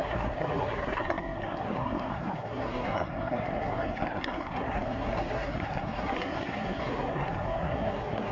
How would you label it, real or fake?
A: fake